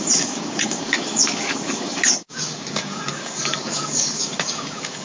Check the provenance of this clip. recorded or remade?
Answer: remade